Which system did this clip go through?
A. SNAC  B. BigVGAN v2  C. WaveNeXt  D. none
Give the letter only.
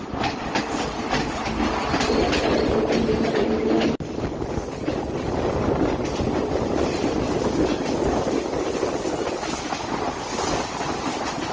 D